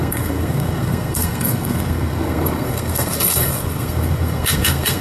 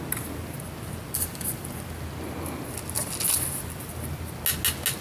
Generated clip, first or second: first